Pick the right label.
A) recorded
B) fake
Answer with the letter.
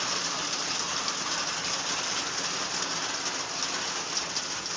A